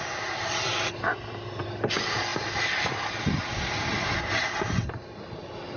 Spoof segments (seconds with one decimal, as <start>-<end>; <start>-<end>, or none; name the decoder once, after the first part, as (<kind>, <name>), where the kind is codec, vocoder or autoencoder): 0.0-2.3 (vocoder, BigVGAN v2)